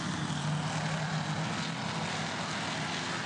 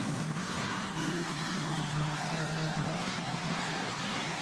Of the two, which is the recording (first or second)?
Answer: first